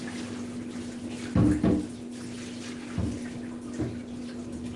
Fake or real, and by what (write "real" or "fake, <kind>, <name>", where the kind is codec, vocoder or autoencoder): real